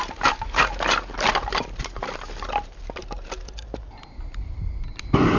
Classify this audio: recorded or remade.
recorded